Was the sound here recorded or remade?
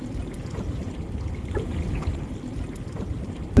recorded